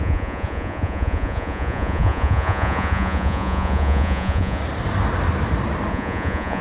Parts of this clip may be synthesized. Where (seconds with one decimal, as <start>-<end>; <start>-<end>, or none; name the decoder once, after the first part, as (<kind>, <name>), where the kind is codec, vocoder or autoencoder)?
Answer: 0.0-4.6 (vocoder, Vocos); 5.9-6.6